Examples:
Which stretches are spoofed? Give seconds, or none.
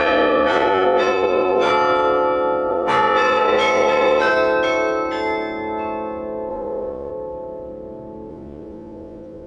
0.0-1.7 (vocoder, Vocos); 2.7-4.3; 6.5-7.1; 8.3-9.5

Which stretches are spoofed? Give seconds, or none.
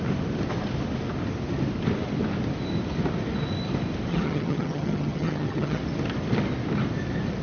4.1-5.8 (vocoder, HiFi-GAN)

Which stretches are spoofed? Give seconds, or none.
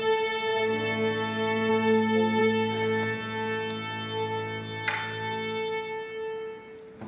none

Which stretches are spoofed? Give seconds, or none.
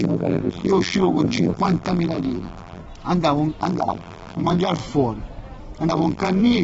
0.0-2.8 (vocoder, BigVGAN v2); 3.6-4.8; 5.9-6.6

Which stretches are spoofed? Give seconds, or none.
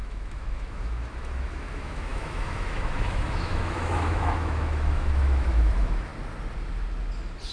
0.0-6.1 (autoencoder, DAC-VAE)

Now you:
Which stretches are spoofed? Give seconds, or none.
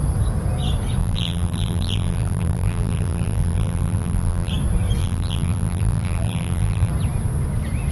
1.0-4.5 (vocoder, BigVGAN v2); 5.0-6.9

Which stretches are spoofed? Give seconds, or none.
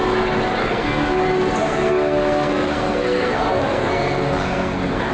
0.6-1.2 (codec, SNAC); 1.6-5.1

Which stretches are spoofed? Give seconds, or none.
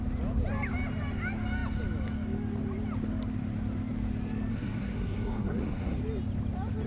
4.5-6.0 (codec, SNAC)